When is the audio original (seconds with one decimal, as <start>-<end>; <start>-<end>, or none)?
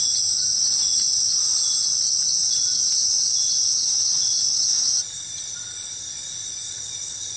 0.0-7.4